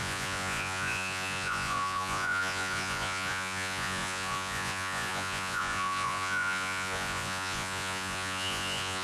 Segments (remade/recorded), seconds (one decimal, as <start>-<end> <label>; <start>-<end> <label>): 0.0-9.0 remade